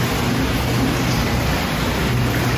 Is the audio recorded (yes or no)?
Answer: yes